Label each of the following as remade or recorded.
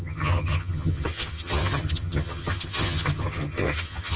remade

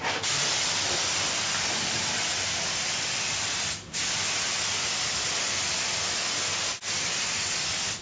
recorded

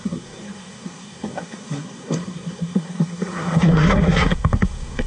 remade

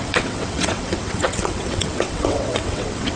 remade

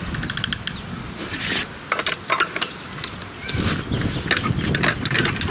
recorded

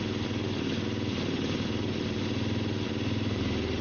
recorded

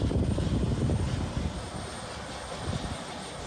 recorded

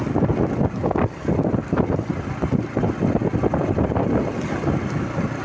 recorded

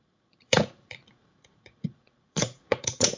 remade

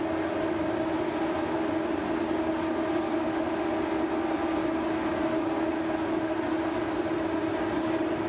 recorded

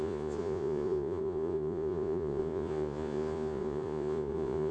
remade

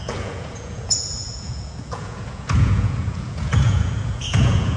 remade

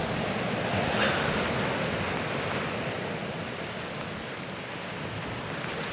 recorded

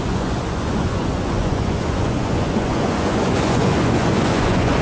remade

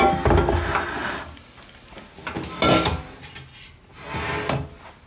recorded